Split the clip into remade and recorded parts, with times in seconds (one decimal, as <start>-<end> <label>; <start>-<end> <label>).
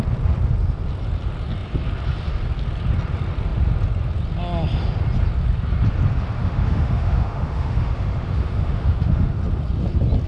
0.0-6.4 recorded; 6.4-9.3 remade; 9.3-10.3 recorded